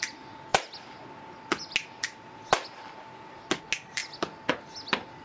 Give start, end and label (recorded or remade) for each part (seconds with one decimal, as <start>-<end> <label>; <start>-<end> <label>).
0.0-5.2 recorded